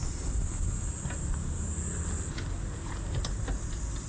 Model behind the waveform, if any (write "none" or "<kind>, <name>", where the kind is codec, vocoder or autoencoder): none